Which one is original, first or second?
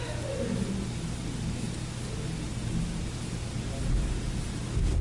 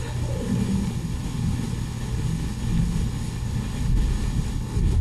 first